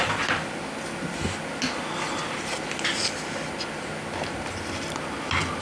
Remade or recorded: recorded